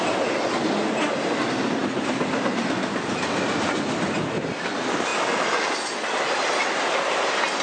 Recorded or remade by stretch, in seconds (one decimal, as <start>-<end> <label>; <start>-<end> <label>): 0.0-7.6 recorded